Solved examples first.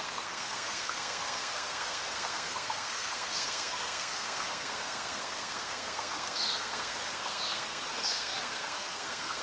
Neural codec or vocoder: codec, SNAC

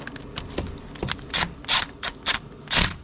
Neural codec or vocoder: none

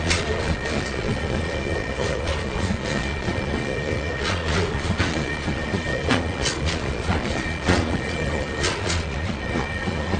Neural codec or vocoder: vocoder, Vocos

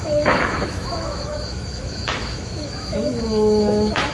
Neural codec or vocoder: autoencoder, DAC-VAE